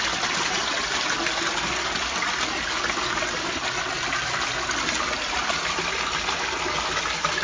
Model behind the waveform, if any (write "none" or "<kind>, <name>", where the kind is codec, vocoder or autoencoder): none